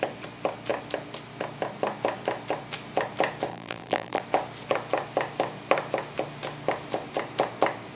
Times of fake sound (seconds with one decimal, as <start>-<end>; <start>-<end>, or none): 3.5-4.2